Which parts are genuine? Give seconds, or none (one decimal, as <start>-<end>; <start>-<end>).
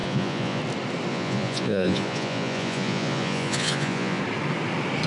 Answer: 0.6-1.1; 4.2-5.1